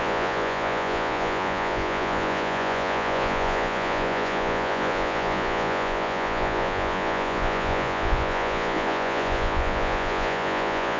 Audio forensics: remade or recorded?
remade